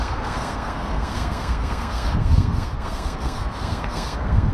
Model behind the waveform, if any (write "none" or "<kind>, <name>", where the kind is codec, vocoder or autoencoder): codec, SNAC